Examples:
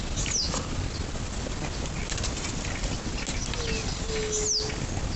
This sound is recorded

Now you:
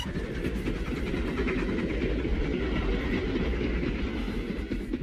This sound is recorded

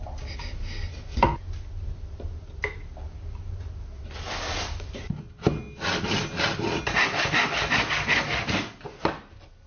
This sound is recorded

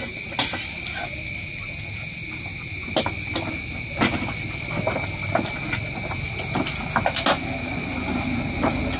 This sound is recorded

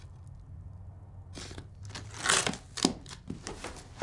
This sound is recorded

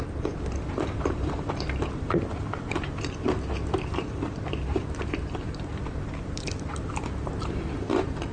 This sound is remade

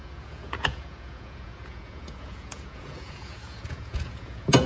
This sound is remade